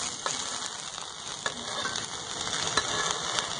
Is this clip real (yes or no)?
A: yes